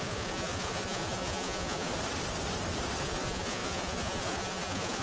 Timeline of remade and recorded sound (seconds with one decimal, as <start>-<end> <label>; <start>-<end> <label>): 0.0-1.9 remade; 1.9-3.0 recorded; 3.0-5.0 remade